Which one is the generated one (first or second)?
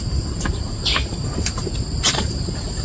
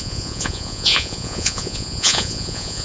second